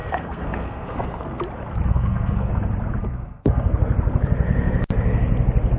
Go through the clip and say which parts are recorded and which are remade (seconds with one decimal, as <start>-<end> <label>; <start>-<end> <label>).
0.0-1.4 remade; 1.4-1.9 recorded; 1.9-2.5 remade; 2.5-3.0 recorded; 3.0-3.7 remade; 3.7-5.8 recorded